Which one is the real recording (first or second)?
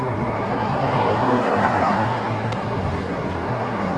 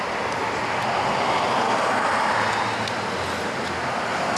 second